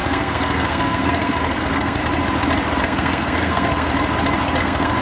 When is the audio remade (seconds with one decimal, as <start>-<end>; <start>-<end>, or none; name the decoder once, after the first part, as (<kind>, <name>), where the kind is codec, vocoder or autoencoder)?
0.0-2.0 (codec, SNAC); 2.8-3.9; 4.6-5.0

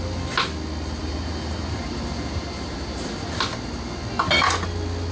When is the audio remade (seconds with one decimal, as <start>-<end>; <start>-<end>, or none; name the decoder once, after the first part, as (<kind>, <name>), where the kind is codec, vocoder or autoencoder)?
1.0-3.4 (vocoder, BigVGAN v2)